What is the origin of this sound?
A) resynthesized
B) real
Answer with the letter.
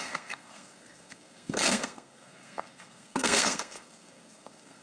A